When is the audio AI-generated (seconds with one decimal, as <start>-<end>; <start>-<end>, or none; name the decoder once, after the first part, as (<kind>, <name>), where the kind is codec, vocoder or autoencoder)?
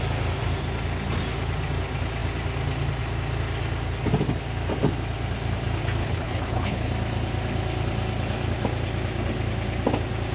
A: 6.0-6.9 (codec, HILCodec)